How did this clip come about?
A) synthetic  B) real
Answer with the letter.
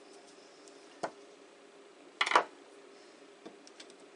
B